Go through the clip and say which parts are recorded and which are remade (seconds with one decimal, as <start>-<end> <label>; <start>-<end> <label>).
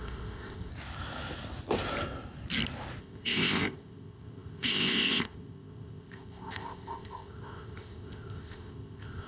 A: 0.0-0.7 remade; 0.7-3.0 recorded; 3.0-9.3 remade